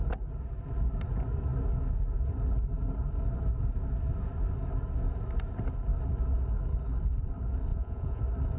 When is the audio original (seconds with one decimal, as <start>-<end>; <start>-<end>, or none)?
0.0-7.7; 8.2-8.6